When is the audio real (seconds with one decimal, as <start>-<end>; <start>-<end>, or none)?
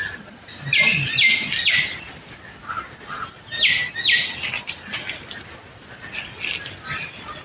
0.0-7.4